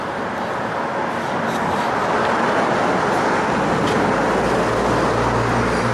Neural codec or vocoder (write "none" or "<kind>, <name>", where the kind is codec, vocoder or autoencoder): none